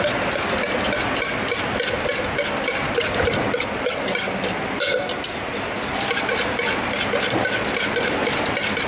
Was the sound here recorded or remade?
recorded